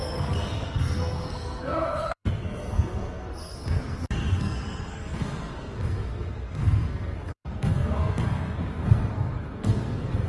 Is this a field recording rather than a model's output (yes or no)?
no